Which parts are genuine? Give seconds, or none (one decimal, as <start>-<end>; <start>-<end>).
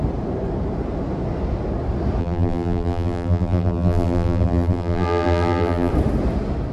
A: 0.0-2.2; 5.9-6.7